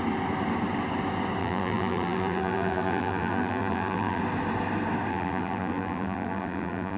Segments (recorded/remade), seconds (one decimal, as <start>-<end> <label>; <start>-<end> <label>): 0.0-1.4 recorded; 1.4-4.2 remade; 4.2-5.1 recorded; 5.1-7.0 remade

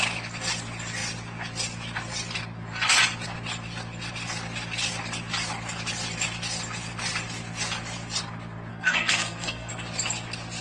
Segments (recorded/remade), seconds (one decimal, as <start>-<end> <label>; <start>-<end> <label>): 0.0-8.7 recorded; 8.7-9.7 remade; 9.7-10.6 recorded

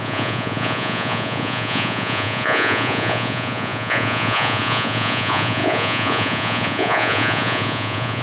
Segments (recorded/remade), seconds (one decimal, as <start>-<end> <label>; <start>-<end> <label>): 0.0-8.2 remade

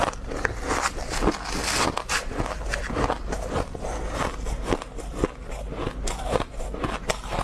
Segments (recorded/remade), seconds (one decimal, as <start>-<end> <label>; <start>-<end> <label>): 0.0-4.1 remade; 4.1-7.4 recorded

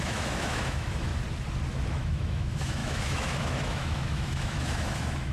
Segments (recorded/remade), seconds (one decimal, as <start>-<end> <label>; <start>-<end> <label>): 0.0-1.1 remade; 1.1-1.9 recorded; 1.9-5.3 remade